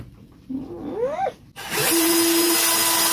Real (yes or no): yes